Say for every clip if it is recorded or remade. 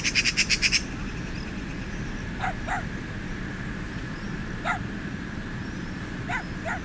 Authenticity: recorded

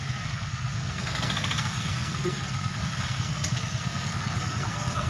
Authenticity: remade